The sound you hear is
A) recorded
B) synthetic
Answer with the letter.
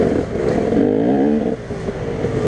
A